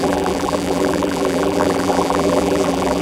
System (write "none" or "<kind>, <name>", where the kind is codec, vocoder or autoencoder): vocoder, BigVGAN v2